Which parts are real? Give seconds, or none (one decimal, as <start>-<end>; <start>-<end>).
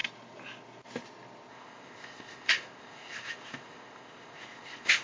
0.0-1.5